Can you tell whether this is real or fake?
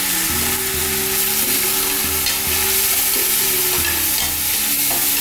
real